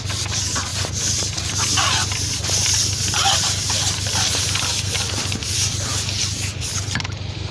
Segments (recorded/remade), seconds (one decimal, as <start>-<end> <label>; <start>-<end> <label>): 0.0-7.5 recorded

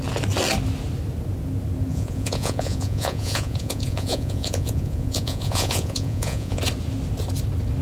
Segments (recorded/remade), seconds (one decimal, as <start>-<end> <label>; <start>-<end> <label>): 0.0-1.9 recorded; 1.9-6.6 remade; 6.6-7.8 recorded